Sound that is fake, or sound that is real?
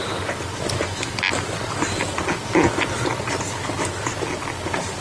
real